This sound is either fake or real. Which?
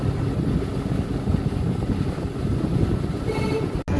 real